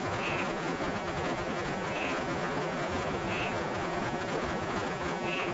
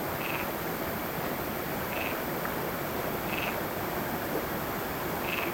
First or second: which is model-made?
first